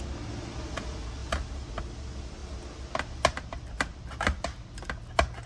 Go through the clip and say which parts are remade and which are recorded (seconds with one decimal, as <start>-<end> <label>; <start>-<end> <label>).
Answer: 0.0-1.2 recorded; 1.2-1.8 remade; 1.8-5.5 recorded